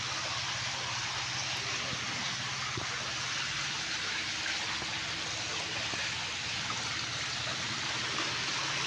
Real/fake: real